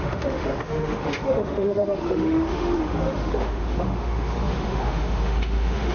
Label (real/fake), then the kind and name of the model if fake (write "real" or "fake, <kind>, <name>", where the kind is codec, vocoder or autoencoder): fake, autoencoder, DAC-VAE